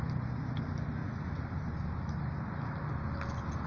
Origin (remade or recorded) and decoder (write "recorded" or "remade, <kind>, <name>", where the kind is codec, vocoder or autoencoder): recorded